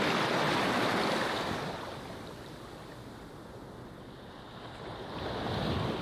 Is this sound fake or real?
real